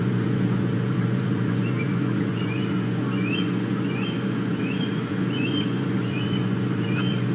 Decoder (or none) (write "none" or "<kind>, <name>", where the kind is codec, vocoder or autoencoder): vocoder, Vocos